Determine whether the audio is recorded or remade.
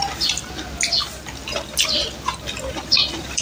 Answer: recorded